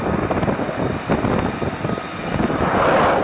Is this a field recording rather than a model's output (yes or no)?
yes